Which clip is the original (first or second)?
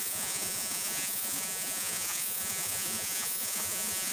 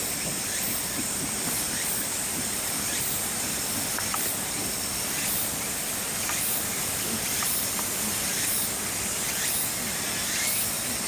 second